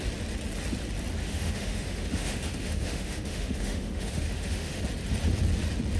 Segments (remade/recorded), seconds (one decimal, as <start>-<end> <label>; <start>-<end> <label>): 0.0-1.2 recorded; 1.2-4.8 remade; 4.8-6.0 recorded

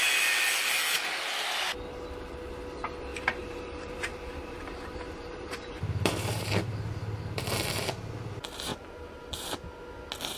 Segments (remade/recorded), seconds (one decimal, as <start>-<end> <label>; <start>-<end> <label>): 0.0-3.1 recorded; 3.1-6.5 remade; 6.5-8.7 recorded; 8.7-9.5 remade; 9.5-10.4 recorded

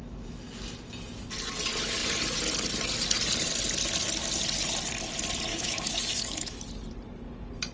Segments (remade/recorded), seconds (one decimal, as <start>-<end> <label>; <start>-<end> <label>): 0.0-5.5 recorded; 5.5-6.6 remade; 6.6-7.7 recorded

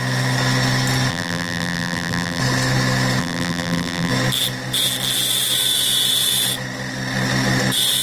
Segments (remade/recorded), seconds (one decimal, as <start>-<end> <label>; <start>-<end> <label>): 0.0-1.1 recorded; 1.1-2.4 remade; 2.4-3.2 recorded; 3.2-4.1 remade; 4.1-8.0 recorded

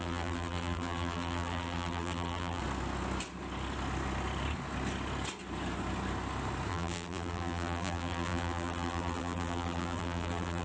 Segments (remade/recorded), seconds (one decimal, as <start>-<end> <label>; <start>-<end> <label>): 0.0-2.6 remade; 2.6-6.7 recorded; 6.7-10.6 remade